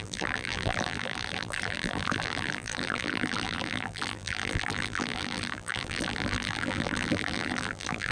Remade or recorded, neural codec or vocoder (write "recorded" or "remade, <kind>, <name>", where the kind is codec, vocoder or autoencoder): remade, vocoder, BigVGAN v2